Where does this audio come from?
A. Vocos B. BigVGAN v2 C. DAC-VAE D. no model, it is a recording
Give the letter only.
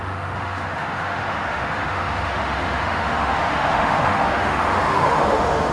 C